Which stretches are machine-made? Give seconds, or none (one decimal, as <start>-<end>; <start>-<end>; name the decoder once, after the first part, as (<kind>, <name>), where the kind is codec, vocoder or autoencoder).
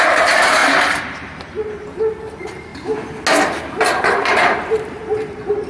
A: 0.0-2.7 (vocoder, BigVGAN v2); 4.0-5.7